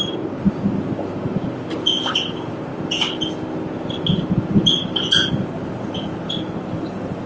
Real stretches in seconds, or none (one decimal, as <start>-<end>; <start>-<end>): 0.0-7.3